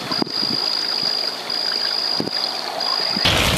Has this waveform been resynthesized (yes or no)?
no